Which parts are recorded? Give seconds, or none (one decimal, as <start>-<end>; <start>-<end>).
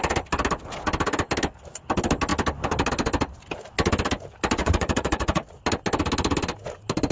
0.0-4.6; 5.6-7.1